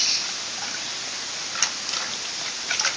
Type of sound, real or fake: real